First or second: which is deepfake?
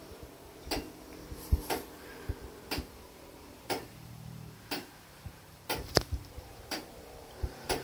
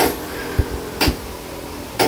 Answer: first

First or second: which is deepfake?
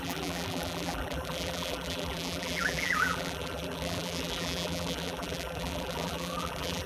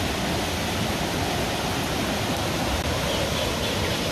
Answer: first